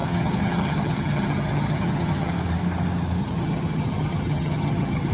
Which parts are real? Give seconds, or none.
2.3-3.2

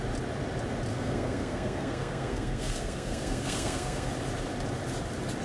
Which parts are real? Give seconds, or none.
0.0-0.9; 4.1-5.4

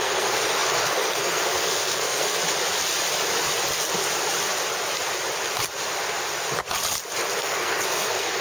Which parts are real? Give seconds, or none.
2.4-7.4